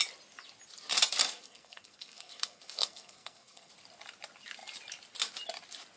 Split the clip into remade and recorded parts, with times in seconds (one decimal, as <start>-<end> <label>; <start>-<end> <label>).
0.0-1.2 recorded; 1.2-3.7 remade; 3.7-6.0 recorded